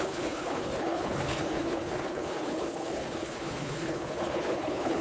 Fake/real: fake